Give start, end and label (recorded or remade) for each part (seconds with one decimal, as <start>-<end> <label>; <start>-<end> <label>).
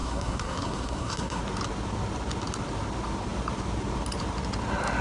0.0-1.4 remade; 1.4-5.0 recorded